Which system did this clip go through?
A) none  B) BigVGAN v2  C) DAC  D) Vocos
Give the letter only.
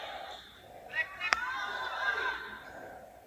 B